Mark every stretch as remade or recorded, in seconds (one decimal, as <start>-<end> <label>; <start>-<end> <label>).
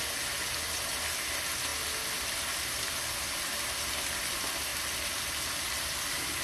0.0-6.4 recorded